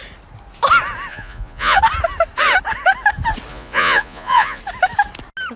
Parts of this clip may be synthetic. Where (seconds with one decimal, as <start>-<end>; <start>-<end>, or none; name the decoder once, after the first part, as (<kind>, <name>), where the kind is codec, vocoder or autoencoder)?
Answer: 1.1-1.8 (vocoder, Vocos); 3.5-4.6